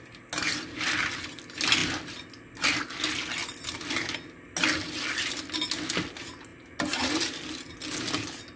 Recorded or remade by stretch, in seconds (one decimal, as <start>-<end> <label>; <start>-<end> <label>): 0.0-8.6 recorded